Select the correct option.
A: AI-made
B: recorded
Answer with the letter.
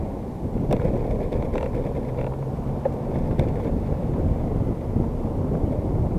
B